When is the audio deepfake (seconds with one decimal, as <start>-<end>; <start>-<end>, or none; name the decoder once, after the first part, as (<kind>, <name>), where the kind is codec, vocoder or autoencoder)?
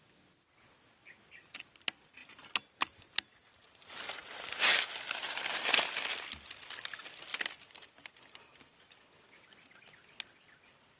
none